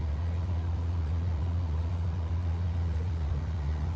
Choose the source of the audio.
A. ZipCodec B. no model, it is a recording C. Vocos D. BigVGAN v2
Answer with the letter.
C